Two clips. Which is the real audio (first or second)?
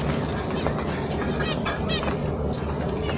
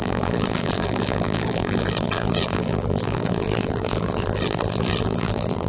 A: first